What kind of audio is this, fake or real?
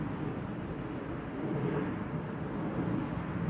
real